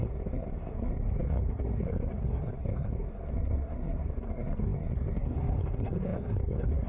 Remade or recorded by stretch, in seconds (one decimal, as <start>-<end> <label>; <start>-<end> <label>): 0.0-6.9 remade

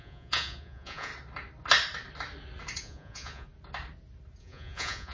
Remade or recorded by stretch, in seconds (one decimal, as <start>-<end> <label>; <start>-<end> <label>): 0.0-1.1 remade; 1.1-2.8 recorded; 2.8-3.5 remade; 3.5-4.4 recorded; 4.4-5.1 remade

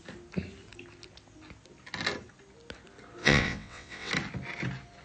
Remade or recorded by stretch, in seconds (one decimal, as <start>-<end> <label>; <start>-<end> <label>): 0.0-3.2 recorded; 3.2-4.1 remade; 4.1-5.0 recorded

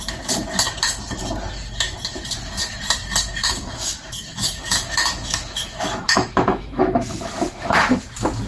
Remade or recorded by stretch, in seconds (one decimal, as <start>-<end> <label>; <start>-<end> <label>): 0.0-3.4 recorded; 3.4-8.0 remade; 8.0-8.5 recorded

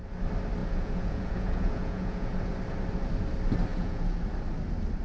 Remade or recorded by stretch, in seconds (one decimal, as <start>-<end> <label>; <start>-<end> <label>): 0.0-0.6 recorded; 0.6-2.5 remade; 2.5-3.7 recorded; 3.7-4.2 remade; 4.2-5.0 recorded